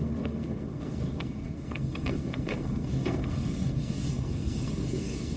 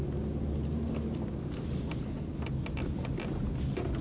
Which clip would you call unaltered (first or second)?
second